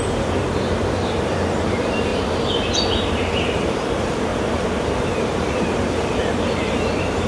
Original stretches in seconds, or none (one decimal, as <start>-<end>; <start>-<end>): 2.1-3.1; 4.3-5.0